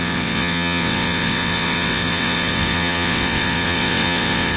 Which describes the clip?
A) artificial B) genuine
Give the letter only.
A